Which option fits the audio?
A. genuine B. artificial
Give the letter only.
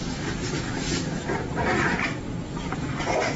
A